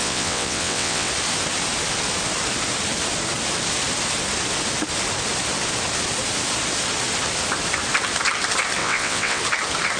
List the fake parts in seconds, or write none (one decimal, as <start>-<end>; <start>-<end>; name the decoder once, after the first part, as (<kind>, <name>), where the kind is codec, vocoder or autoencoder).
0.0-1.1 (vocoder, WaveNeXt); 8.8-9.4